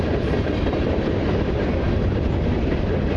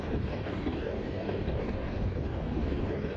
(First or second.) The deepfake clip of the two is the second